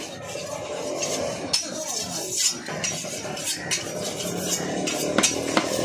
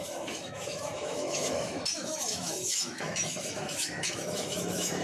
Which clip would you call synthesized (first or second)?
second